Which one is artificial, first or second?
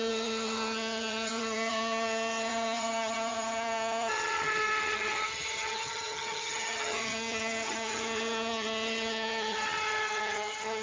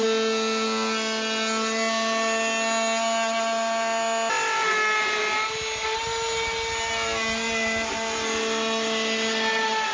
first